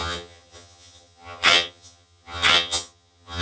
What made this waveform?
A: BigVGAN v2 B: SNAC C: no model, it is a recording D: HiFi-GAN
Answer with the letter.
D